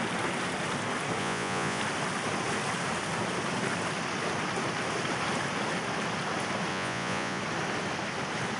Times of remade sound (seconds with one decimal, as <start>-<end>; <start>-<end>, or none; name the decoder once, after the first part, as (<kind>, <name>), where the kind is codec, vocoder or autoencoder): 1.2-1.8 (vocoder, Vocos); 6.7-7.4